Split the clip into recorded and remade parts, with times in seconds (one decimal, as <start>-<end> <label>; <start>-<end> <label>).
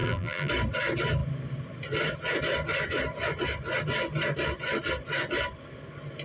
0.0-0.5 remade; 0.5-6.2 recorded